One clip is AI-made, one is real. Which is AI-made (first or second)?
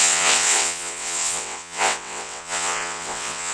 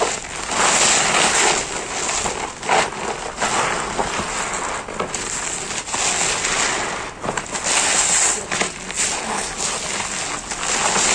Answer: first